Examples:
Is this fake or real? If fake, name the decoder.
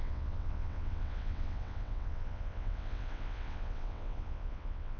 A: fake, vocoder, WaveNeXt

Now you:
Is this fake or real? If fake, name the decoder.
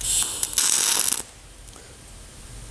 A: real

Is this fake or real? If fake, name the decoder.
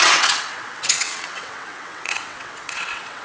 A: fake, vocoder, WaveNeXt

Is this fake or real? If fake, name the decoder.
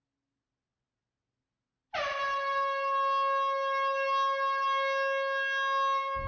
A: real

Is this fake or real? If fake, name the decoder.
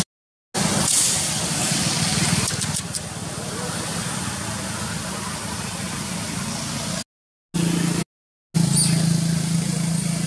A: real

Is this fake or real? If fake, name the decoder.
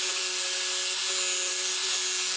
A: real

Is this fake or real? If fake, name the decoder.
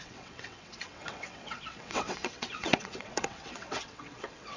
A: fake, vocoder, WaveNeXt